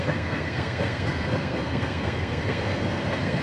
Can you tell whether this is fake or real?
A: fake